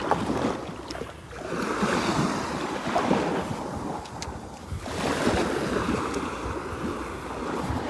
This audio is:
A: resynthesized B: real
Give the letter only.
B